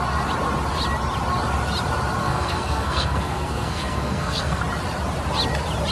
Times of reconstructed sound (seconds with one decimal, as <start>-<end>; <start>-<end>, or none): 2.2-4.6